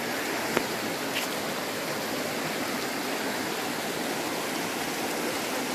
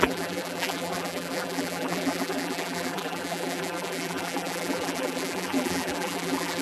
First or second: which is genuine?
first